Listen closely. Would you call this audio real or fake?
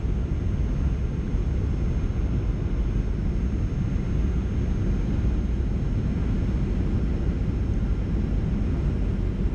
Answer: real